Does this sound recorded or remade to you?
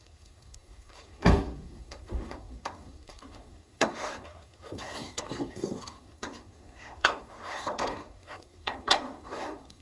remade